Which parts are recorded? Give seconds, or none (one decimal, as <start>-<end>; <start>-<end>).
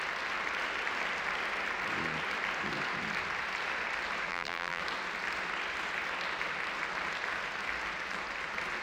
0.0-4.3; 4.8-8.8